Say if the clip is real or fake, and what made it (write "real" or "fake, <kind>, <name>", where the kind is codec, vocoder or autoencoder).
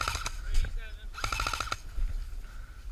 real